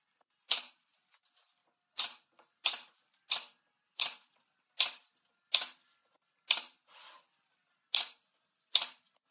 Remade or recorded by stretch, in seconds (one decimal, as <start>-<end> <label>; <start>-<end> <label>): 0.0-9.3 recorded